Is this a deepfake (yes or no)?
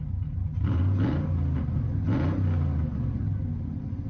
no